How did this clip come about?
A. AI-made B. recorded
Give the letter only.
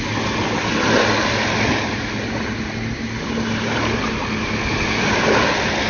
B